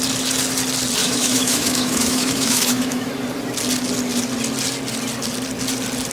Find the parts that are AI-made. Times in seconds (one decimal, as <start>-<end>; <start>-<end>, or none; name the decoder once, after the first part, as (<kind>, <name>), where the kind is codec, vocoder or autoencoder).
1.0-3.1 (autoencoder, DAC-VAE)